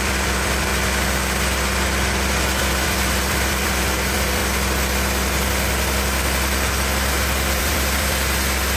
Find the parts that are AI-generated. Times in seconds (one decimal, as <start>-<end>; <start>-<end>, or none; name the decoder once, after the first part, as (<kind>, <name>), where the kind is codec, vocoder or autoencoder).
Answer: 0.0-0.7 (vocoder, BigVGAN v2); 2.6-4.4; 7.6-8.8

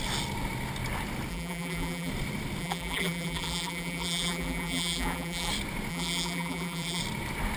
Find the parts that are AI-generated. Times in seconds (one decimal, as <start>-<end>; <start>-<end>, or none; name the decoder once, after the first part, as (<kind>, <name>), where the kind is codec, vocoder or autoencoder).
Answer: 1.3-2.1 (vocoder, BigVGAN v2); 2.6-5.5; 5.9-7.0

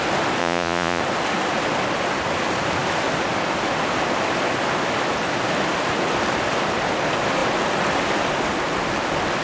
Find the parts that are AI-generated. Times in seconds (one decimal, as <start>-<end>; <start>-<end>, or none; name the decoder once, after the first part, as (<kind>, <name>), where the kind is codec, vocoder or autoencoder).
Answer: 0.4-1.0 (vocoder, Vocos)

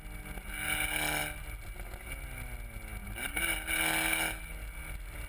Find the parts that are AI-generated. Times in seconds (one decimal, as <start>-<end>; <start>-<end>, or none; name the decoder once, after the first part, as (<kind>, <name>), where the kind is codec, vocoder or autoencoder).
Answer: none

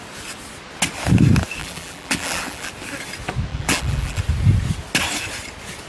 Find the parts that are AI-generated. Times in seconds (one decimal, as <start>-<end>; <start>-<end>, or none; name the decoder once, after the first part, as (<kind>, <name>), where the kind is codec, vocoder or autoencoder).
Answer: 1.6-2.7 (vocoder, BigVGAN v2); 3.5-4.2

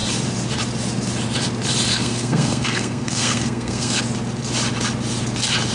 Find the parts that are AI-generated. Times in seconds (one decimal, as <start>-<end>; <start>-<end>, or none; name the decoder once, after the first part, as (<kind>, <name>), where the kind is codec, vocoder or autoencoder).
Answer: 1.9-4.0 (codec, SNAC)